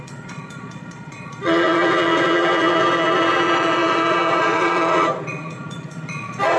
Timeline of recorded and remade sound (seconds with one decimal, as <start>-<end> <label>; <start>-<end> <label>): 0.0-6.6 remade